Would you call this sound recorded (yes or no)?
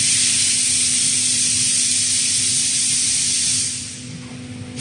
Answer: yes